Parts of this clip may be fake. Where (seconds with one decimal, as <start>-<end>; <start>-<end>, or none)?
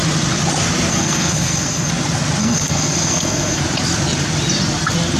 0.9-1.9; 2.4-3.6